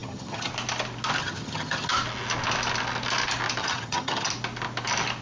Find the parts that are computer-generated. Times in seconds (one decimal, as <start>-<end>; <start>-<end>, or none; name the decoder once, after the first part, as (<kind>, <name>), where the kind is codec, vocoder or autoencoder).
0.0-0.5 (vocoder, HiFi-GAN); 1.2-1.9; 3.6-4.3